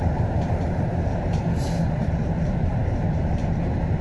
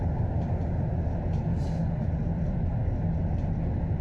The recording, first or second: second